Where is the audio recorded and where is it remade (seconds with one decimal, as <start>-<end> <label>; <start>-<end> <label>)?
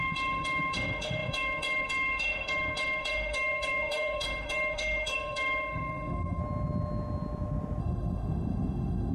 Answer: 0.0-6.4 remade; 6.4-7.8 recorded; 7.8-9.1 remade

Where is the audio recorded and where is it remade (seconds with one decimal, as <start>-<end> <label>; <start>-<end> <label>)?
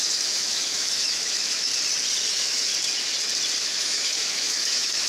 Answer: 0.0-1.7 remade; 1.7-2.3 recorded; 2.3-2.7 remade; 2.7-3.6 recorded; 3.6-5.1 remade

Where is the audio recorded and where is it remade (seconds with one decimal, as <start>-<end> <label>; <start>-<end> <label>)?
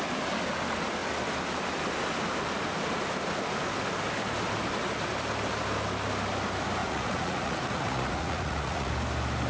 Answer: 0.0-6.8 recorded; 6.8-8.9 remade; 8.9-9.5 recorded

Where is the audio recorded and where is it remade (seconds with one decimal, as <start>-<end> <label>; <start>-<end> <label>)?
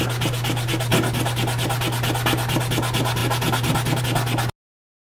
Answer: 0.0-5.1 recorded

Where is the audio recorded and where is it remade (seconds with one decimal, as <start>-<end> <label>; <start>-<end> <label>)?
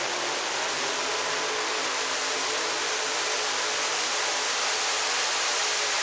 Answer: 0.0-6.0 recorded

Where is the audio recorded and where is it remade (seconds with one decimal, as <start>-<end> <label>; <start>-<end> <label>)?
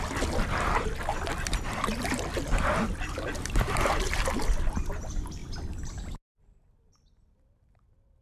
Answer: 0.0-5.4 remade; 5.4-6.3 recorded; 6.3-8.2 remade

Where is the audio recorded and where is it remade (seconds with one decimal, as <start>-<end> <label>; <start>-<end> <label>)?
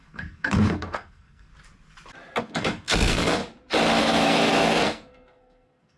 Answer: 0.0-1.5 remade; 1.5-2.4 recorded; 2.4-3.4 remade; 3.4-4.0 recorded; 4.0-6.0 remade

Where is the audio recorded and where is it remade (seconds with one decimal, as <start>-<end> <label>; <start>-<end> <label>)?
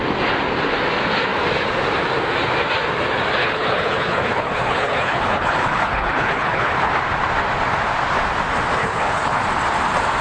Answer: 0.0-3.4 recorded; 3.4-6.9 remade; 6.9-8.8 recorded; 8.8-9.4 remade; 9.4-10.2 recorded